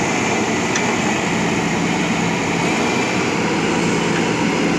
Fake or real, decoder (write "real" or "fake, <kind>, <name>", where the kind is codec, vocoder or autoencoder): real